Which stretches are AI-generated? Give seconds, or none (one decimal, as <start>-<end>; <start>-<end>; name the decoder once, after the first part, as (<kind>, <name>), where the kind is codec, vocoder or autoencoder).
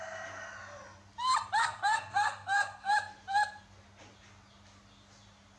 1.6-2.9 (codec, SNAC)